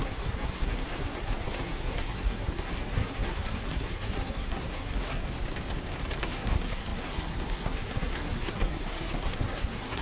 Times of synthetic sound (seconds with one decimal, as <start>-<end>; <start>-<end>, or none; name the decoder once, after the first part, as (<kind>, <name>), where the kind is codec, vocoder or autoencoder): 0.0-5.2 (codec, SNAC); 6.2-10.0